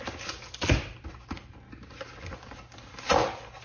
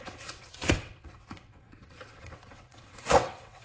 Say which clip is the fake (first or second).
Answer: second